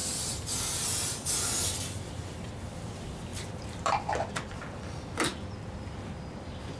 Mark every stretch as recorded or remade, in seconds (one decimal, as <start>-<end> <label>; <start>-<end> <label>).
0.0-3.3 recorded; 3.3-4.1 remade; 4.1-6.8 recorded